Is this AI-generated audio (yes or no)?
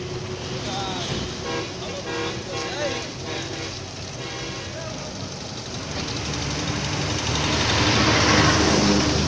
no